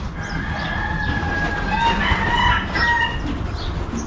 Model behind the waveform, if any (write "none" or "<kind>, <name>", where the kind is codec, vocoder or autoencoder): none